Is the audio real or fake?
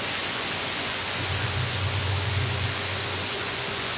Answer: fake